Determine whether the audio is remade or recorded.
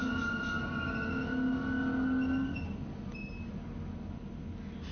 recorded